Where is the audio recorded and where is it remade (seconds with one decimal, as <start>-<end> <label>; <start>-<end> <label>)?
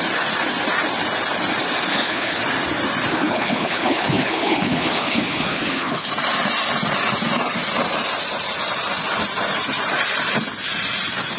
0.0-1.9 recorded; 1.9-2.4 remade; 2.4-3.1 recorded; 3.1-6.1 remade; 6.1-11.4 recorded